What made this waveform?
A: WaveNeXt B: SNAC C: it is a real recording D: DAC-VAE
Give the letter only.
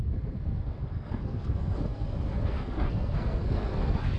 B